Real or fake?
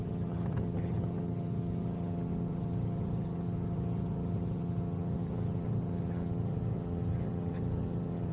fake